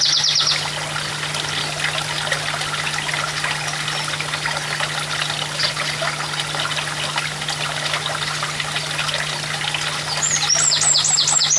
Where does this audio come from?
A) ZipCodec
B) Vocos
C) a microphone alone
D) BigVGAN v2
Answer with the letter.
C